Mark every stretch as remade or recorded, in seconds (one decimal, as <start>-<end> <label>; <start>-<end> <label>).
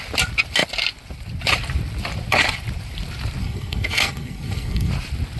0.0-3.4 recorded; 3.4-4.9 remade; 4.9-5.4 recorded